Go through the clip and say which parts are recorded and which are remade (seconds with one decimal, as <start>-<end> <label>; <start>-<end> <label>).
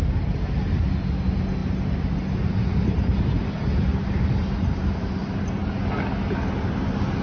0.0-7.2 recorded